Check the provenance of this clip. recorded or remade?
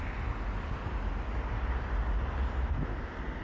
recorded